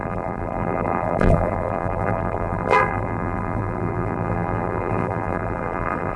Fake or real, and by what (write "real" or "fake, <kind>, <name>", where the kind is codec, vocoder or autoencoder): fake, vocoder, BigVGAN v2